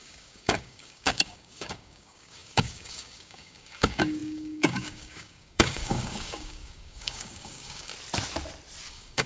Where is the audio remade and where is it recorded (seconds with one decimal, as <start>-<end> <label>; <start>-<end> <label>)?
0.0-7.9 remade; 7.9-8.9 recorded; 8.9-9.3 remade